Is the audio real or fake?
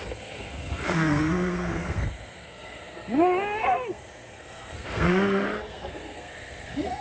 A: fake